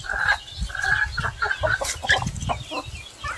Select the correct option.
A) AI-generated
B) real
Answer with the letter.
B